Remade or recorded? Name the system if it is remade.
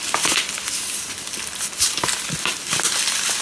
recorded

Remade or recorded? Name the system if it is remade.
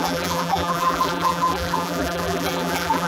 remade, vocoder, BigVGAN v2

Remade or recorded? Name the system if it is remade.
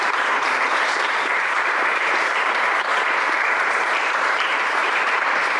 remade, vocoder, BigVGAN v2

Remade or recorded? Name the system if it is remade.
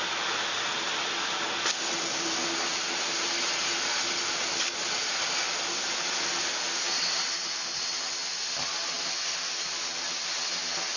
recorded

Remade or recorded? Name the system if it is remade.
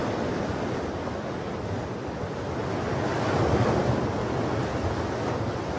recorded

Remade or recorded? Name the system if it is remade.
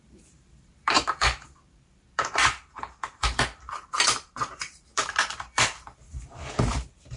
remade, vocoder, BigVGAN v2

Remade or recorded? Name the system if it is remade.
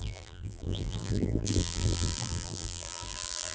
remade, vocoder, BigVGAN v2